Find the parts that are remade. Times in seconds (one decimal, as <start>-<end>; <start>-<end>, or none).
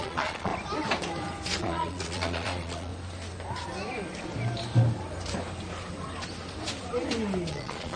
0.0-0.5; 1.6-2.9; 7.5-8.0